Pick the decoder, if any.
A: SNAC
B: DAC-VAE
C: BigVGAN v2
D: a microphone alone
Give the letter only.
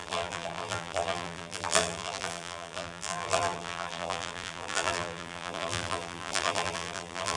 C